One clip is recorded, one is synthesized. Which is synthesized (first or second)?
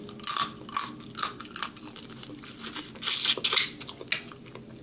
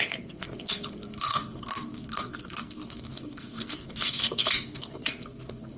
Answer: second